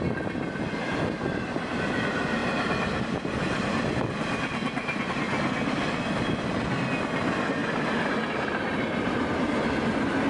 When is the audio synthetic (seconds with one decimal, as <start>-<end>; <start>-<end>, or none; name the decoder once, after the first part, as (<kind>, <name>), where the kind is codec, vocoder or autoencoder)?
2.4-5.1 (vocoder, BigVGAN v2); 7.6-9.3